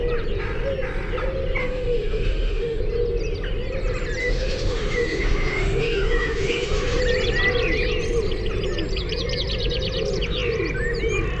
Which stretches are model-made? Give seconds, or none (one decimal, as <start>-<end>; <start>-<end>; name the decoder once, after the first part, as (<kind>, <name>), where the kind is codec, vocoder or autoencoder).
1.6-2.8 (autoencoder, DAC-VAE); 4.2-7.0